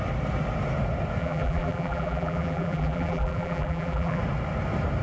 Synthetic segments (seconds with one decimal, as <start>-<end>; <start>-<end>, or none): 1.2-4.2